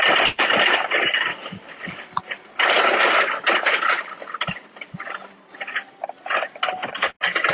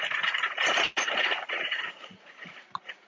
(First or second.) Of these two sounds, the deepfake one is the second